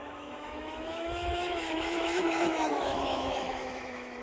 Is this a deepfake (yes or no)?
yes